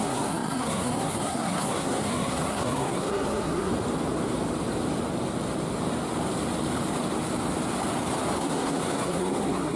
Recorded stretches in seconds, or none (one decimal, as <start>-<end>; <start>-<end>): 3.7-8.4

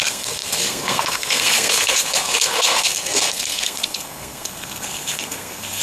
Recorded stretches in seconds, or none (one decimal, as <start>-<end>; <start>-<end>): none

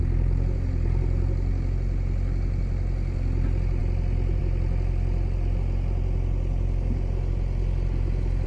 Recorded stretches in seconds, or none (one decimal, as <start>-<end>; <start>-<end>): 0.0-8.5

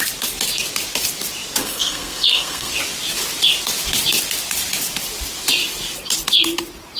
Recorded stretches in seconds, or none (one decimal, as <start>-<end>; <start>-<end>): 0.0-1.6; 2.7-7.0

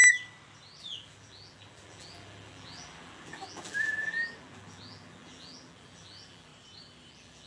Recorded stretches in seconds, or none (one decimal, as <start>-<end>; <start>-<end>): 0.0-0.8; 6.5-7.1

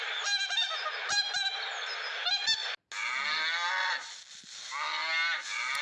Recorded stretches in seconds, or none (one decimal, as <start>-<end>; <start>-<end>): 0.0-5.8

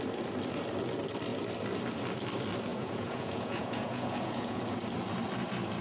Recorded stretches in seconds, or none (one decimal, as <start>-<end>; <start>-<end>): 0.0-2.7; 4.6-5.8

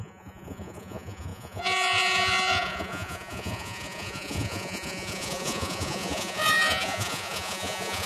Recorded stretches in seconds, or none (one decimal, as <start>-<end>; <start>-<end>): none